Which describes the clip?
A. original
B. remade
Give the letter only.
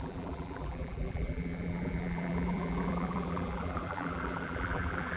B